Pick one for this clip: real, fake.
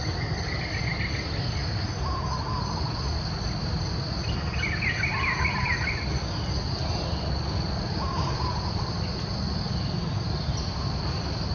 real